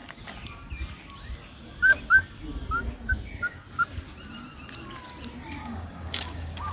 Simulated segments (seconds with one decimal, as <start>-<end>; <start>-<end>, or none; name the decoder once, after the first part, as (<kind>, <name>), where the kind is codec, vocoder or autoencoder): 5.6-6.7 (codec, DAC)